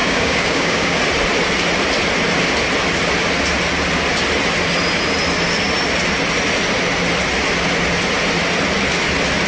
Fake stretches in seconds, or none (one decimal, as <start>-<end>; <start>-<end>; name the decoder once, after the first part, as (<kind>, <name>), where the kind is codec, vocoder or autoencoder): 0.0-1.0 (codec, DAC)